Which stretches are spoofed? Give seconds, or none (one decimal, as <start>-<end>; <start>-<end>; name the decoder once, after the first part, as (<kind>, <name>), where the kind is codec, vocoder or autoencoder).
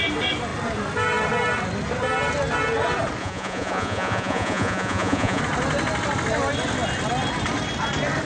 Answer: 3.2-5.4 (vocoder, Vocos)